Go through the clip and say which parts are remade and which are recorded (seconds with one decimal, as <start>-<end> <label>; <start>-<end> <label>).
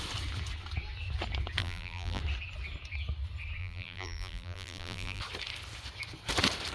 0.0-1.6 recorded; 1.6-2.2 remade; 2.2-3.6 recorded; 3.6-5.2 remade; 5.2-6.7 recorded